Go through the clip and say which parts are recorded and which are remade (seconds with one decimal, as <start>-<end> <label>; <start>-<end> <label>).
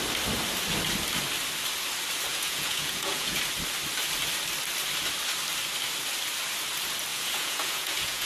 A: 0.0-2.3 recorded; 2.3-3.4 remade; 3.4-7.1 recorded; 7.1-8.3 remade